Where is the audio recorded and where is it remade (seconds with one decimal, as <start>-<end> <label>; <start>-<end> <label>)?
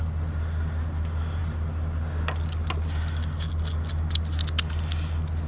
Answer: 0.0-5.5 recorded